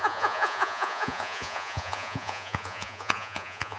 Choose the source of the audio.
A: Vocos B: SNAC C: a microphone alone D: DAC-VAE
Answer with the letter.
A